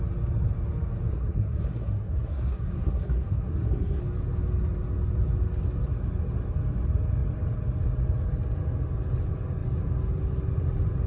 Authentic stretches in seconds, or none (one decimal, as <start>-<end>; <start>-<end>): 0.0-1.1; 4.0-11.1